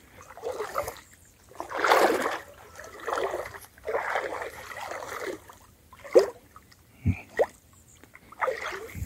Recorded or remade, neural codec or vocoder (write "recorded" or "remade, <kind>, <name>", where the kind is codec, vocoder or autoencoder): recorded